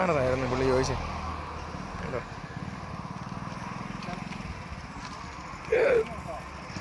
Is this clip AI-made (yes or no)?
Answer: no